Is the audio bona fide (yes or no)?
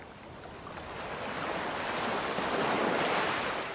yes